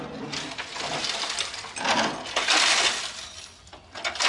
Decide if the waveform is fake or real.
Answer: real